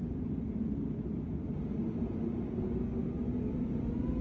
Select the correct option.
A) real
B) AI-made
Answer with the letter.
A